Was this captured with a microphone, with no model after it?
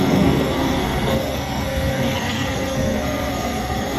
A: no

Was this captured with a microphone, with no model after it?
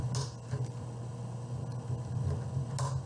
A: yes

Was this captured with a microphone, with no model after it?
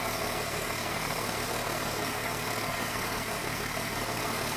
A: no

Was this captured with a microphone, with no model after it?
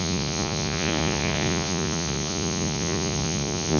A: no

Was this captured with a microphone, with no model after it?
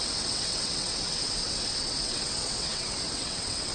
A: no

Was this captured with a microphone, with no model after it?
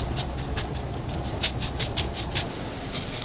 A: yes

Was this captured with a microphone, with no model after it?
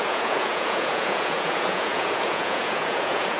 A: no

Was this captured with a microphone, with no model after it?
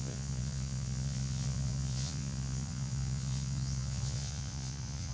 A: no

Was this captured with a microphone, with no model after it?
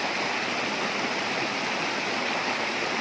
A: yes